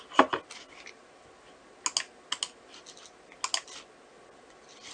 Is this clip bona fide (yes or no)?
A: yes